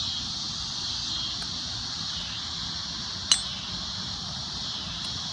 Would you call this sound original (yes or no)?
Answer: yes